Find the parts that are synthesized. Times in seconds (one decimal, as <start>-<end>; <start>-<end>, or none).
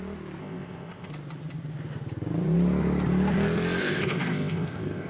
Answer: 0.4-1.1; 3.8-5.1